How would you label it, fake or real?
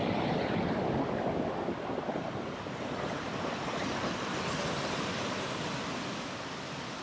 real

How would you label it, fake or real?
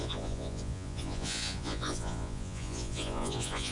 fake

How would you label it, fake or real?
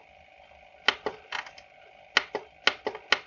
real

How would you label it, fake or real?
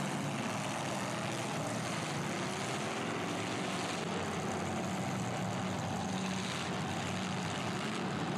real